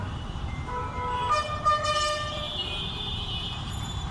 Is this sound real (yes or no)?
no